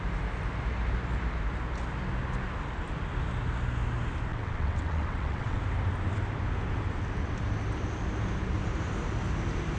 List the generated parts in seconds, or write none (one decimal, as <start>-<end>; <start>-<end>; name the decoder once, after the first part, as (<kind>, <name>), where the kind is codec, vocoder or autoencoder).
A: 4.3-5.6 (vocoder, WaveNeXt)